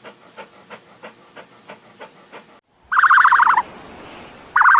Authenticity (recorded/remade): recorded